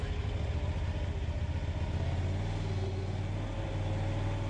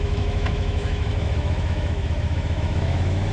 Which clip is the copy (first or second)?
second